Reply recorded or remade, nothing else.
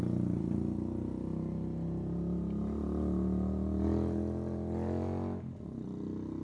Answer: recorded